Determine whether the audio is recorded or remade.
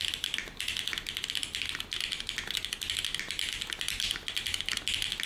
recorded